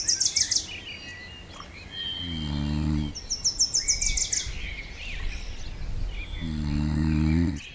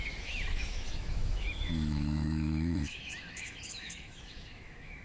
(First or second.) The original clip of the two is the first